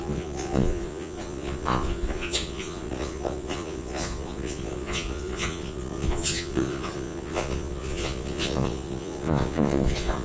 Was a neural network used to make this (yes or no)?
yes